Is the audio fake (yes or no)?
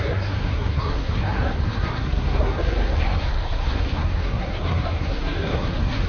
yes